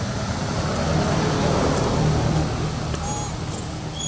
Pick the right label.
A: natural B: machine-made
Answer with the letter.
A